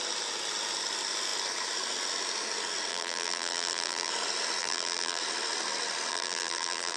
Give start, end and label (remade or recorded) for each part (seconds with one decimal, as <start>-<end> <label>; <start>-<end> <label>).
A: 0.0-2.9 recorded; 2.9-4.1 remade; 4.1-4.6 recorded; 4.6-5.2 remade; 5.2-6.1 recorded; 6.1-7.0 remade

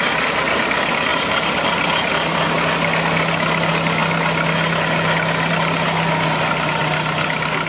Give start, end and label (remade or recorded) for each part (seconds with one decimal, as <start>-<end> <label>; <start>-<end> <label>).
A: 0.0-1.1 recorded; 1.1-2.1 remade; 2.1-7.7 recorded

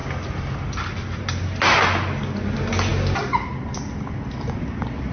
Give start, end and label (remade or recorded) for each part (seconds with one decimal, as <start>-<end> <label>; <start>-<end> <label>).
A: 0.0-5.1 recorded

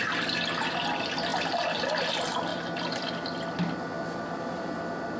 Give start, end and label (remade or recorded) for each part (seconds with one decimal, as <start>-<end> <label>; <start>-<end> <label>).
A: 0.0-2.5 recorded; 2.5-3.1 remade; 3.1-5.2 recorded